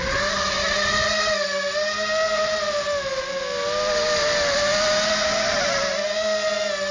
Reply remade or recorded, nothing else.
recorded